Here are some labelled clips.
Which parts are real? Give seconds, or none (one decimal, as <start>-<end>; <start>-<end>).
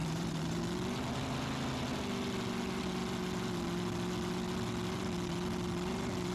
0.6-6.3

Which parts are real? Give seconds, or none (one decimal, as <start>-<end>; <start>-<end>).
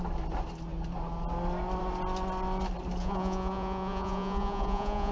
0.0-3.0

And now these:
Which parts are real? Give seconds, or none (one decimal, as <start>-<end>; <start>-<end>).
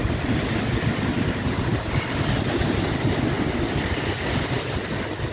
0.0-5.3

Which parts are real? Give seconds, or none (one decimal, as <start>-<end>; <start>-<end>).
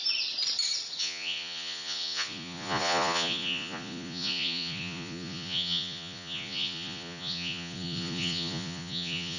0.0-1.0